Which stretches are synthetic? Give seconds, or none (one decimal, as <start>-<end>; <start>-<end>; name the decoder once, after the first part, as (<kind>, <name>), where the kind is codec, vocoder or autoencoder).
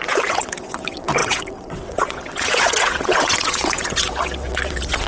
0.0-5.1 (vocoder, WaveNeXt)